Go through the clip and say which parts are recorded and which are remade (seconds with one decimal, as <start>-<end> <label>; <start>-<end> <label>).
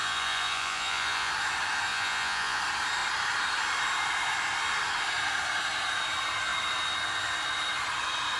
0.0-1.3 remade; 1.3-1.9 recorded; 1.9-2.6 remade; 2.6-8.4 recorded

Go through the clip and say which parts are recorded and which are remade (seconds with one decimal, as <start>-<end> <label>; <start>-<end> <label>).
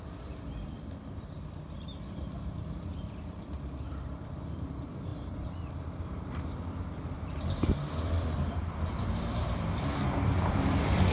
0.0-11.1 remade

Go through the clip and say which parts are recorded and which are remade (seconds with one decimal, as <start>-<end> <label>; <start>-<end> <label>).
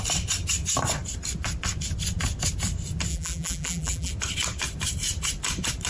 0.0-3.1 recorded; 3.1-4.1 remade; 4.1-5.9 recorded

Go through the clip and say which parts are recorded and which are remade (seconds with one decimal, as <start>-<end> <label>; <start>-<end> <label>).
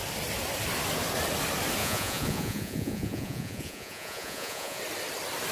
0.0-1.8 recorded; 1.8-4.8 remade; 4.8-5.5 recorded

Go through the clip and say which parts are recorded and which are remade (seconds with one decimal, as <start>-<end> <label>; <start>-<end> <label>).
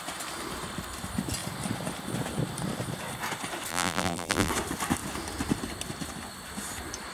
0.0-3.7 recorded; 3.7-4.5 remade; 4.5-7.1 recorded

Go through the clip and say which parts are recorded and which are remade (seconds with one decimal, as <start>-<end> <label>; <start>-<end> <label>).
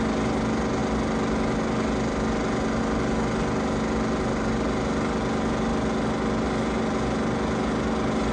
0.0-8.3 recorded